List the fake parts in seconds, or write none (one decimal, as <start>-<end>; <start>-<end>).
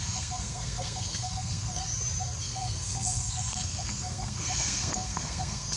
0.0-1.8; 2.4-5.8